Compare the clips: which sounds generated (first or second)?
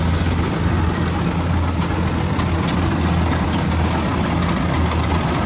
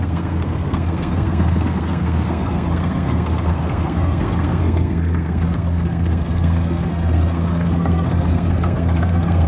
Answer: second